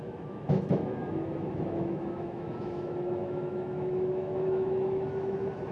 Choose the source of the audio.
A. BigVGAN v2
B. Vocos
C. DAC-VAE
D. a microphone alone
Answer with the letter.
C